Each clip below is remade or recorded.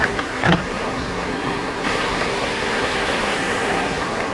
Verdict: remade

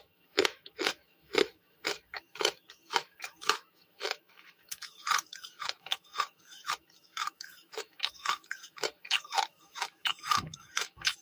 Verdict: remade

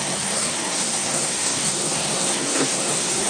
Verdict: remade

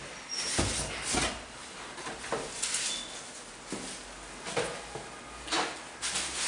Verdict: recorded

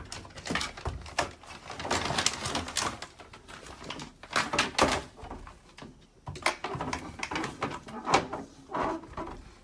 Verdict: recorded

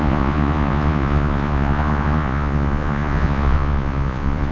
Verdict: remade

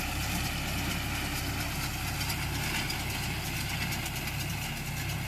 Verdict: recorded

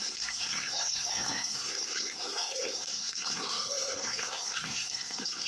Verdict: remade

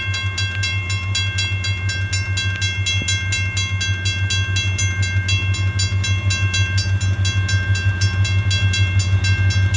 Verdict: recorded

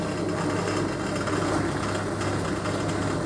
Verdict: recorded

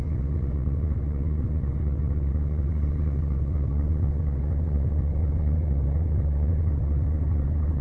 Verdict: remade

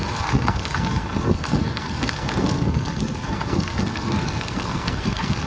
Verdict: remade